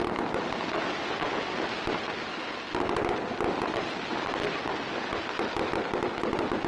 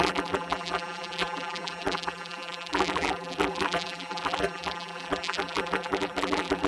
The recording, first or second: first